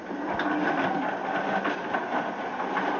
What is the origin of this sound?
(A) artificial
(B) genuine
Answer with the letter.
B